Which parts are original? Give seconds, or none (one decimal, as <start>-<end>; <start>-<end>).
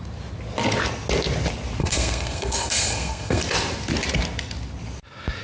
0.0-1.8; 3.4-5.4